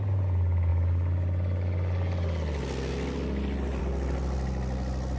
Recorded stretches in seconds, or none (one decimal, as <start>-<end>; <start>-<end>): 0.0-5.2